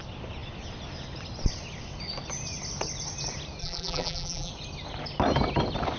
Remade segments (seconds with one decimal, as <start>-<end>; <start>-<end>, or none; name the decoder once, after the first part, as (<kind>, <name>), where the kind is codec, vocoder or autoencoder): 3.6-4.5 (vocoder, BigVGAN v2)

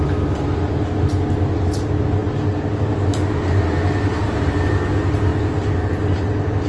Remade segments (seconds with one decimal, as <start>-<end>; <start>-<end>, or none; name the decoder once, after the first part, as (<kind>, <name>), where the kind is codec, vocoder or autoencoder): none

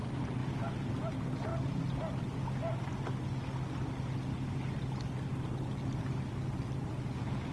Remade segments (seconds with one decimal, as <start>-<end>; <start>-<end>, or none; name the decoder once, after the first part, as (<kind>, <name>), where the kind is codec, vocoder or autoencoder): 0.0-1.5 (vocoder, BigVGAN v2); 4.5-5.3

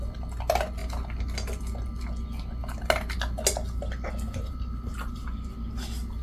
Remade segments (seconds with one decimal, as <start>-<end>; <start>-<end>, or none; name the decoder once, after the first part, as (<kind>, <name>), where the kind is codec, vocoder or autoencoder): none

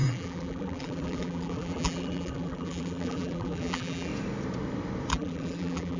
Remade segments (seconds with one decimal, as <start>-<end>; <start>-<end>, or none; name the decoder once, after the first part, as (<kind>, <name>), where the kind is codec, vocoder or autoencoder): 0.0-4.1 (vocoder, BigVGAN v2); 5.1-6.0

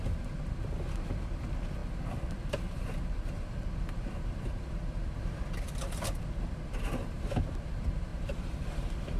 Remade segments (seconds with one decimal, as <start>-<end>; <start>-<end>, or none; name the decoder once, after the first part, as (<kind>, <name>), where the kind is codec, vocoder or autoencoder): 0.0-9.2 (vocoder, BigVGAN v2)